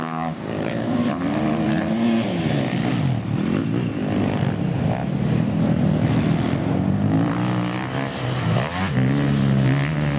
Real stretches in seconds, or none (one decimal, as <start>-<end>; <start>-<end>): 1.0-10.2